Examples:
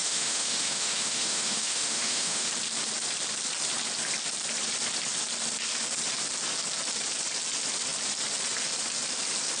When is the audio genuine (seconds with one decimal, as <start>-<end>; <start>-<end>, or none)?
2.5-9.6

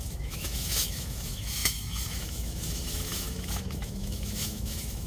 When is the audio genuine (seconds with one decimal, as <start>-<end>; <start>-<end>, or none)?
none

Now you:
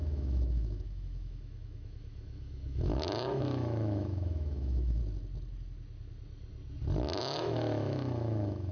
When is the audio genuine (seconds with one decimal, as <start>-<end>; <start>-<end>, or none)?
5.0-7.2